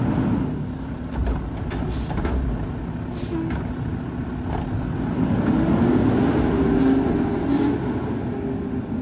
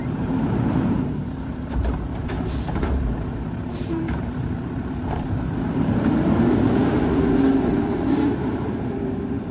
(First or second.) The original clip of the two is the first